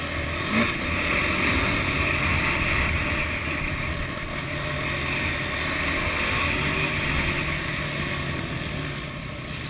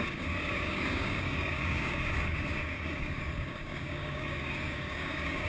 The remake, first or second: second